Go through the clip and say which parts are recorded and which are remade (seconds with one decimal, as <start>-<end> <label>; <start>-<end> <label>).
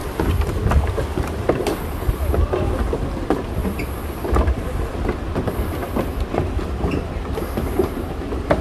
0.0-0.9 remade; 0.9-3.6 recorded; 3.6-4.9 remade; 4.9-8.6 recorded